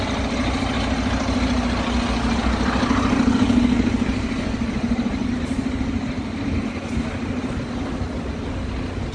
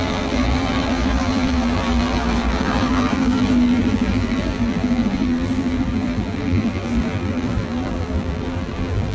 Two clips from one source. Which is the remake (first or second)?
second